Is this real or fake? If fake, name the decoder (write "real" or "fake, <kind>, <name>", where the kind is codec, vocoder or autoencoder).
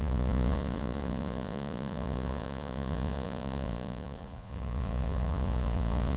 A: fake, vocoder, Vocos